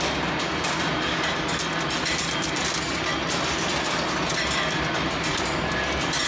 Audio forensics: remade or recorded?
remade